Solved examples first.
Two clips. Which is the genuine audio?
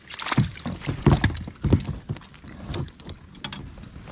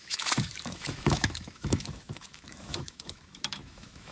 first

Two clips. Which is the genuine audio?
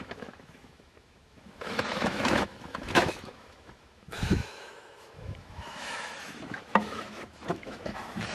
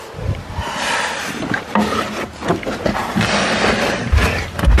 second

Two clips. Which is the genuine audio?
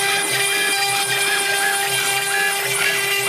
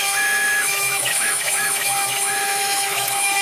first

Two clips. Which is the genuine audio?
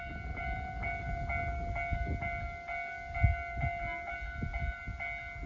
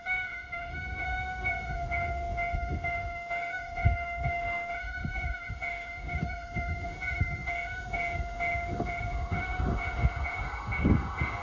first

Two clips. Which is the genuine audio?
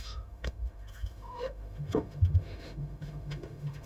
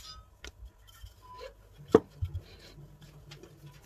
second